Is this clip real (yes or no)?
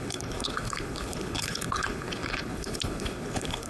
no